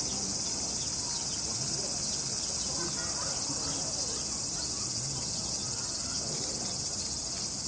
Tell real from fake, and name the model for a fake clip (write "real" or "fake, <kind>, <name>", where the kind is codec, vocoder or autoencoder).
real